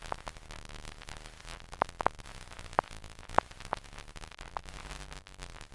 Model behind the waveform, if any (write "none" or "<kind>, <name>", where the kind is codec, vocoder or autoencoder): none